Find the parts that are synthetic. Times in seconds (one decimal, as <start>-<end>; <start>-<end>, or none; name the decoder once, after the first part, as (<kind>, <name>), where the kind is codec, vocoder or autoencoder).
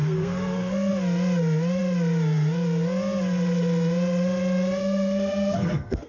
0.0-0.9 (codec, SNAC); 4.8-6.1